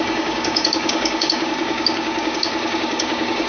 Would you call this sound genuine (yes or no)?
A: no